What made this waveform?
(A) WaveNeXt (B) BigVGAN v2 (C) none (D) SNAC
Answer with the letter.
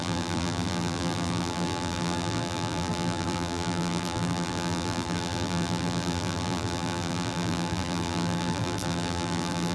B